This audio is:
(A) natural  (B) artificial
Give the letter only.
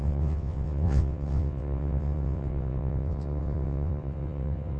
B